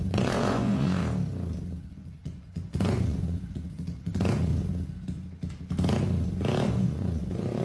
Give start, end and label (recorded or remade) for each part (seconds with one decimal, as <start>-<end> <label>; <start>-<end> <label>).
0.0-1.0 remade; 1.0-1.8 recorded; 1.8-4.5 remade; 4.5-6.7 recorded; 6.7-7.6 remade